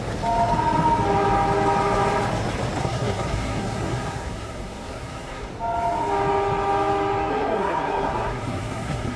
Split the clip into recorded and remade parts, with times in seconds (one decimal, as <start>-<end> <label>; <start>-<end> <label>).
0.0-2.8 recorded; 2.8-5.5 remade; 5.5-7.3 recorded; 7.3-9.2 remade